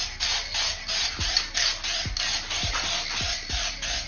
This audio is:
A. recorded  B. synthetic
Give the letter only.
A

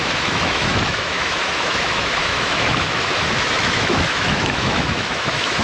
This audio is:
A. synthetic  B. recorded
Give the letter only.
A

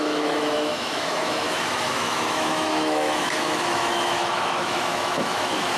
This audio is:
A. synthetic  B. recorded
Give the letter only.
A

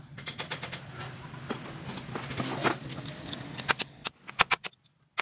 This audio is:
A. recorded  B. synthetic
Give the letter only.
A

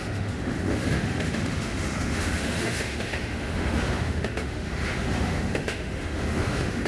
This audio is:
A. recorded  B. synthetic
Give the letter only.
B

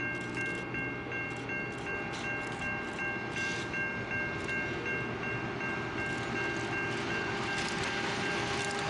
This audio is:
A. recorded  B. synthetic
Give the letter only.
A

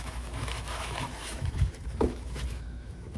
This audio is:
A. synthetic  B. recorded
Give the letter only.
A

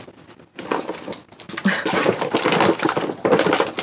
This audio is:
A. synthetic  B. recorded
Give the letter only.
B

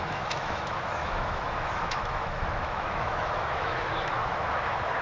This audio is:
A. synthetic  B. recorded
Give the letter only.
A